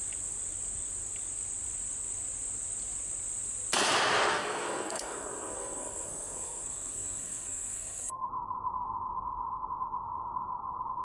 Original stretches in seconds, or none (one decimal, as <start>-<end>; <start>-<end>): 0.0-4.3; 8.3-11.0